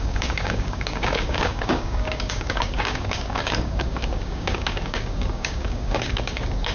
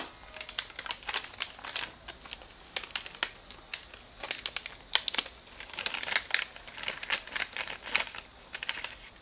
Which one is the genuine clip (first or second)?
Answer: second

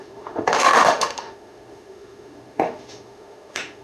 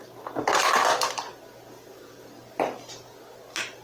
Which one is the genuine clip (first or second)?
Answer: second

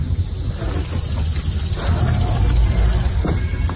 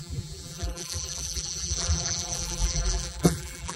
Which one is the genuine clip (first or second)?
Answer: first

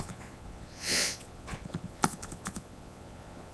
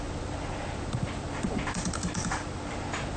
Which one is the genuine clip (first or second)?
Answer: second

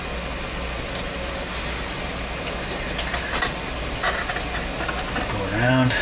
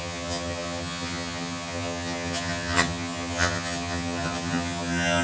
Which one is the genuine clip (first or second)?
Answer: first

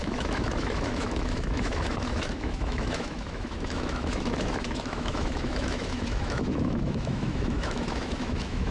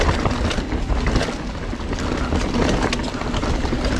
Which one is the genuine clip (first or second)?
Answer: second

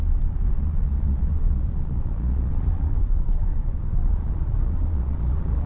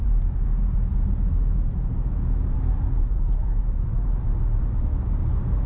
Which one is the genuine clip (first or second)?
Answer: second